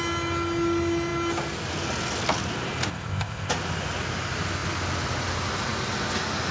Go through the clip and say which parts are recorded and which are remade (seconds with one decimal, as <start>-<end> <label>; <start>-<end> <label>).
0.0-2.9 recorded; 2.9-3.5 remade; 3.5-6.5 recorded